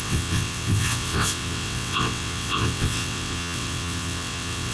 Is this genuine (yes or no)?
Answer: no